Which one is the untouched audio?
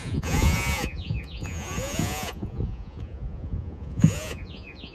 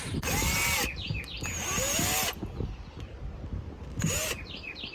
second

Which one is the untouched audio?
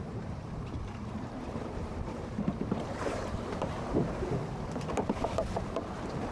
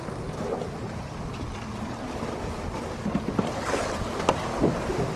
second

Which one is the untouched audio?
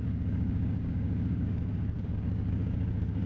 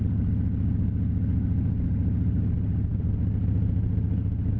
second